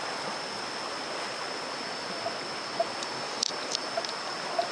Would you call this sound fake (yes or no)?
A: no